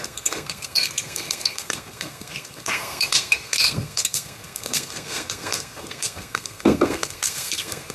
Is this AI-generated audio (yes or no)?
yes